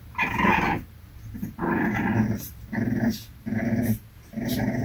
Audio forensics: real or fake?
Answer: real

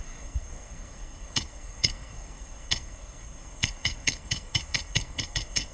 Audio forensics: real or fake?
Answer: fake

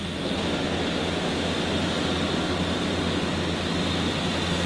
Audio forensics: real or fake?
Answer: real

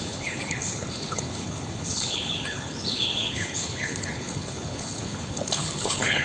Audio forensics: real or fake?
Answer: fake